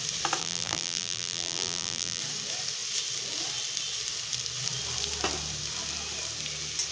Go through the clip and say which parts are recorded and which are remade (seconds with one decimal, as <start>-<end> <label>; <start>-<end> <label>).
0.0-0.4 recorded; 0.4-2.2 remade; 2.2-6.9 recorded